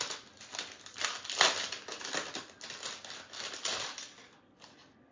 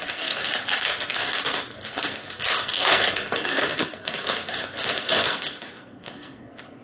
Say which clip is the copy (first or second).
second